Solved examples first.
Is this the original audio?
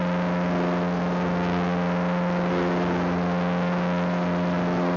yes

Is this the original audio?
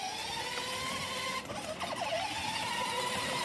yes